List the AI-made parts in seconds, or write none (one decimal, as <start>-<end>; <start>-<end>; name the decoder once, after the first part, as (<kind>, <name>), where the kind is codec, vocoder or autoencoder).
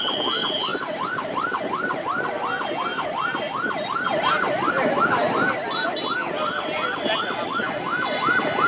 0.7-2.0 (vocoder, BigVGAN v2); 2.9-4.7